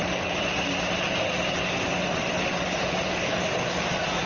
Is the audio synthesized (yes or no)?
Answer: no